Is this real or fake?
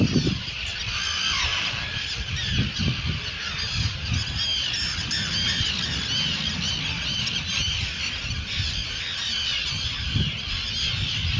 real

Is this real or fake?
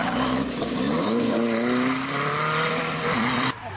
fake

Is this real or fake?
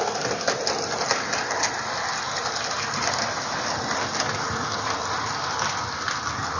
real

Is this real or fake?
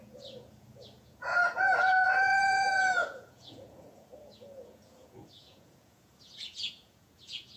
fake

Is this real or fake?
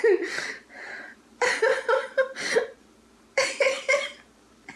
fake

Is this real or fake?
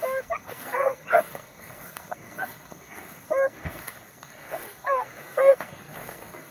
fake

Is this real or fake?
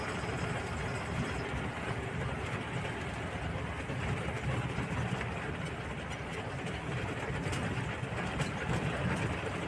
real